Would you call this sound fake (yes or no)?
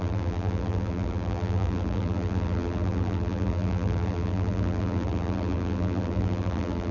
yes